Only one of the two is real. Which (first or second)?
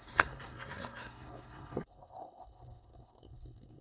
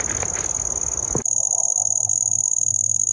second